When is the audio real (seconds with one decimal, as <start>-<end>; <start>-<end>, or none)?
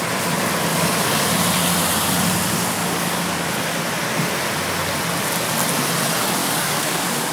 0.0-0.7; 1.3-2.8; 3.5-6.4